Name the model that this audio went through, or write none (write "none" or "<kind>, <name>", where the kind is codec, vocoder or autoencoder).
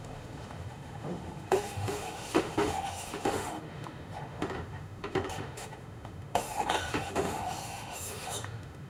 autoencoder, DAC-VAE